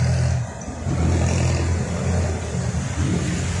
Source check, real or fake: real